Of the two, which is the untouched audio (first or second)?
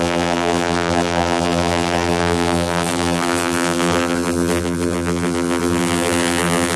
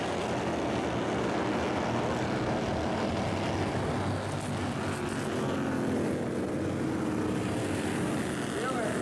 second